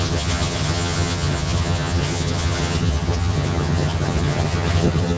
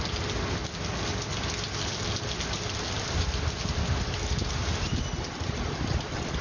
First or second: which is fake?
first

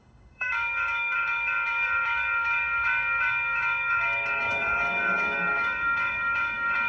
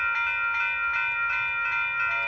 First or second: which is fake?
first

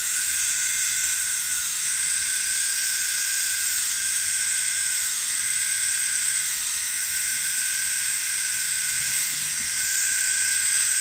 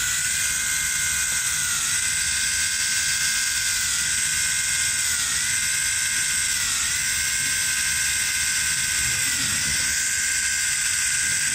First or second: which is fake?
first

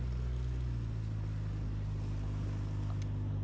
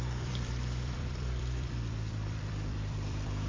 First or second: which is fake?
second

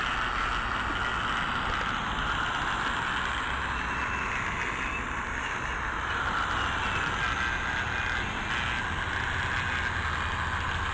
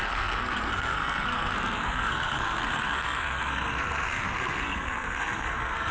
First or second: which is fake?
second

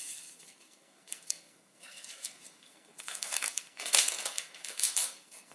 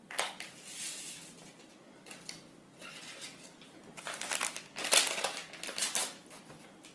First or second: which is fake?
first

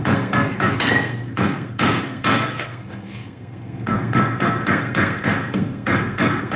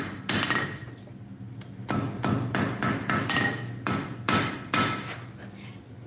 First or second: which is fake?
first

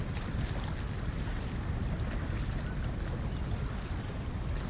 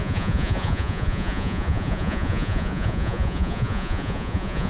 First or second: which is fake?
second